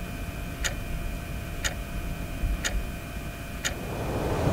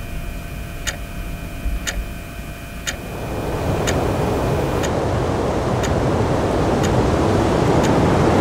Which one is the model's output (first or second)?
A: first